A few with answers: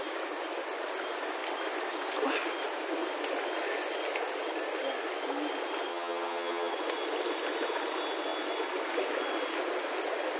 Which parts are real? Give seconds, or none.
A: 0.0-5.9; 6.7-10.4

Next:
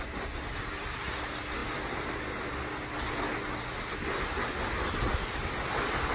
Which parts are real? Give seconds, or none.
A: 0.0-6.1

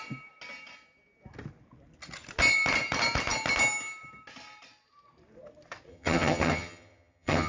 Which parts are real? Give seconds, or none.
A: 0.0-5.9

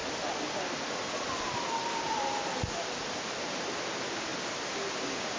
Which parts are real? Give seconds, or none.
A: 0.0-5.4

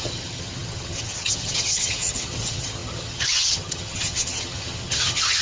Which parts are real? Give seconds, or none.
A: none